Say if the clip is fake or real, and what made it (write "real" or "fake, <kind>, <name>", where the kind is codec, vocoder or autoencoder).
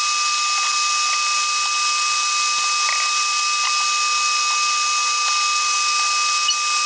real